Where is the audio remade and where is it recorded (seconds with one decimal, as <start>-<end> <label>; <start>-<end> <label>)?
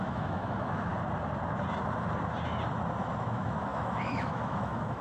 0.0-0.9 remade; 0.9-3.0 recorded; 3.0-5.0 remade